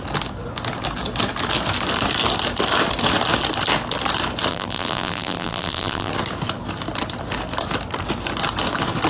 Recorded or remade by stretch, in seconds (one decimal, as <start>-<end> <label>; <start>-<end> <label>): 0.0-4.5 recorded; 4.5-6.1 remade; 6.1-9.1 recorded